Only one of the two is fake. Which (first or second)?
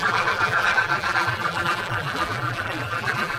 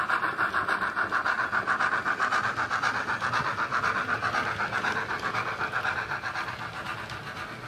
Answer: first